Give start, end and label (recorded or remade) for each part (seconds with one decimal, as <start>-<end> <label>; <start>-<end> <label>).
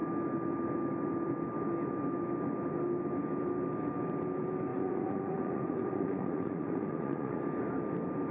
0.0-4.7 recorded; 4.7-7.4 remade; 7.4-8.3 recorded